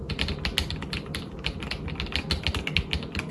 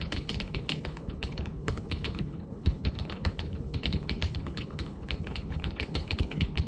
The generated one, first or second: second